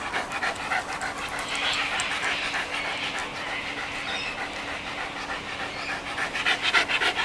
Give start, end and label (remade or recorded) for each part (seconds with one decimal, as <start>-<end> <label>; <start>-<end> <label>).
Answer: 0.0-7.2 recorded

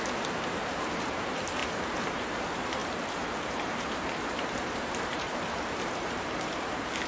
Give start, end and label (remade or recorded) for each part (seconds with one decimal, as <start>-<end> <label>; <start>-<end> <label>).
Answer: 0.0-7.1 remade